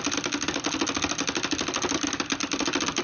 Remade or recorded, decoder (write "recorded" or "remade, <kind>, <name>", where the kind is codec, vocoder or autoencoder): recorded